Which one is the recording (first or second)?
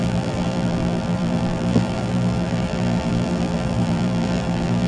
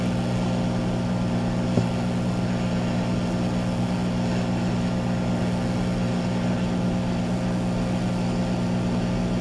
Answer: second